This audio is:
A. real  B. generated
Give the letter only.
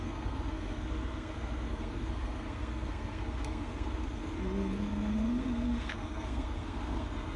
B